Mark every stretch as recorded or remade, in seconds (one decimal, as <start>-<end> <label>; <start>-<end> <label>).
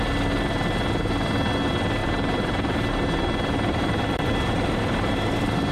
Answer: 0.0-2.0 recorded; 2.0-5.7 remade